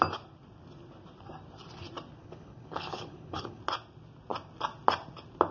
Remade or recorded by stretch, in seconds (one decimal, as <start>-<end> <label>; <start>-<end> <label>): 0.0-2.2 recorded; 2.2-3.6 remade; 3.6-5.5 recorded